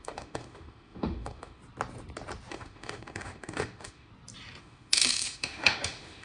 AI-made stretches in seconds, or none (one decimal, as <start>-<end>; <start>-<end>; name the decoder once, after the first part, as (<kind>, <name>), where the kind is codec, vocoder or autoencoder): 0.0-1.6 (autoencoder, DAC-VAE); 2.5-4.1; 4.6-6.2